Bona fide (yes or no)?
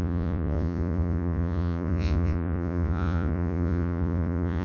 no